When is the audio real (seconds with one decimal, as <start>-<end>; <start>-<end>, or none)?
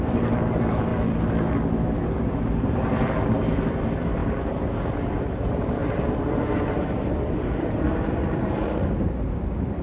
0.9-2.2; 4.2-5.2; 5.8-9.4